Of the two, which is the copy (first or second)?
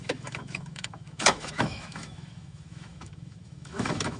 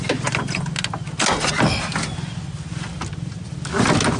first